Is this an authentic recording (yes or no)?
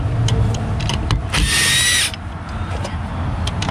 yes